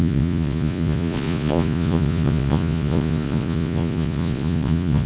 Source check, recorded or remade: remade